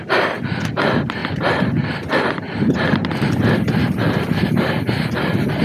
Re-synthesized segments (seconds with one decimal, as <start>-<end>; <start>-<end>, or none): none